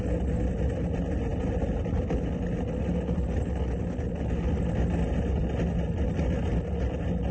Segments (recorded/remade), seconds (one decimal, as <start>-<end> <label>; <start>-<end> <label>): 0.0-7.3 recorded